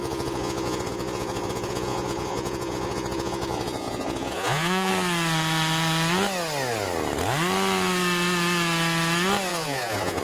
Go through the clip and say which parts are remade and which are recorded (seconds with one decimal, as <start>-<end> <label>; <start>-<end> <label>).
0.0-4.9 remade; 4.9-9.5 recorded; 9.5-10.2 remade

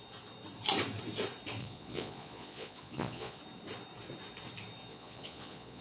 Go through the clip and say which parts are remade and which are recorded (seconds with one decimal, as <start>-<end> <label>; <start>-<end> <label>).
0.0-1.6 recorded; 1.6-3.4 remade; 3.4-4.9 recorded; 4.9-5.8 remade

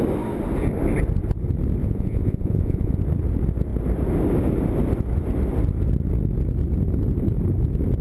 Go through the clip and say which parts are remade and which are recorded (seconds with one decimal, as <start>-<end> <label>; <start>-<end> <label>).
0.0-1.8 recorded; 1.8-3.0 remade; 3.0-8.0 recorded

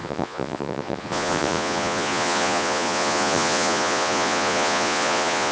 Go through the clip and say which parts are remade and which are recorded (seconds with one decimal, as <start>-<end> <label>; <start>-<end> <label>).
0.0-5.5 remade

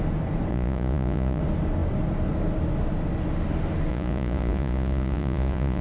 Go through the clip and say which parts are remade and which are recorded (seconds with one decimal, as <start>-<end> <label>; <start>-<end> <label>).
0.0-0.5 recorded; 0.5-1.4 remade; 1.4-3.9 recorded; 3.9-5.8 remade

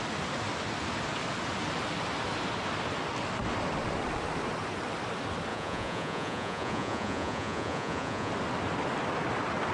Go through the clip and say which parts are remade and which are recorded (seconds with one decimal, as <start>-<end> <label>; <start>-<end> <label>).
0.0-5.5 recorded; 5.5-8.3 remade; 8.3-9.7 recorded

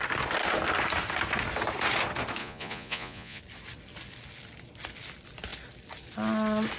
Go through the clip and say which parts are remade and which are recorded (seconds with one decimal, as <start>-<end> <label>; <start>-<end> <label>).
0.0-2.4 recorded; 2.4-3.4 remade; 3.4-6.8 recorded

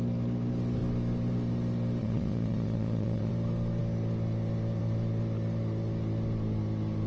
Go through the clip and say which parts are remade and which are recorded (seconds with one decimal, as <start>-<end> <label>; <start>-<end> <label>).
0.0-2.0 recorded; 2.0-3.3 remade; 3.3-7.1 recorded